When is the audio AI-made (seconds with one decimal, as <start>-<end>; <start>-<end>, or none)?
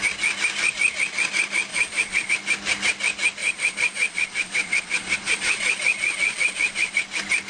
1.7-2.3; 3.4-7.0